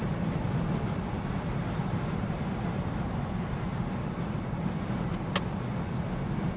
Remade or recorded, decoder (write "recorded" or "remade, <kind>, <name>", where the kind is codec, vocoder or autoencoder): recorded